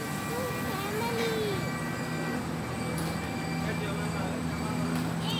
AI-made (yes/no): no